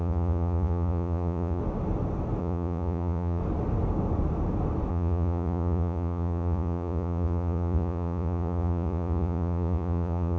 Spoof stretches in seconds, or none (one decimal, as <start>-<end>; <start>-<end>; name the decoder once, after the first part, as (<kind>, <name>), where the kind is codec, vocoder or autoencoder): 0.0-1.6 (vocoder, Vocos); 2.4-3.4; 4.9-10.4